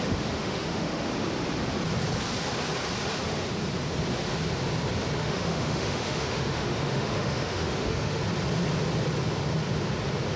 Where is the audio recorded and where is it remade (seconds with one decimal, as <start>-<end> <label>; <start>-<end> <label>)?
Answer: 0.0-1.1 remade; 1.1-5.2 recorded; 5.2-8.2 remade; 8.2-10.4 recorded